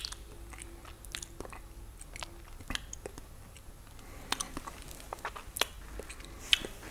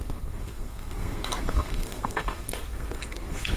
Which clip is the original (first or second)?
first